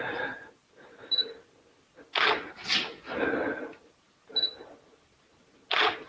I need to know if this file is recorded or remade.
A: recorded